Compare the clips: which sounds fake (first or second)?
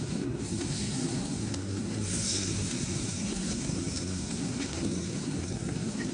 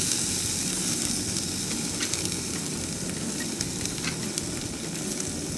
first